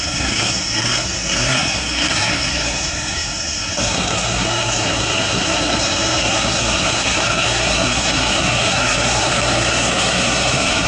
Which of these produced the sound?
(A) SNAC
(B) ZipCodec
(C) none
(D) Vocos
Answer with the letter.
A